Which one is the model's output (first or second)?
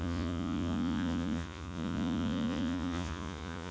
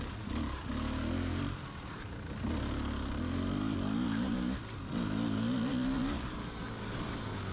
first